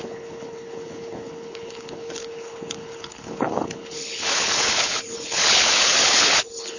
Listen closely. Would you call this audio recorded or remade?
remade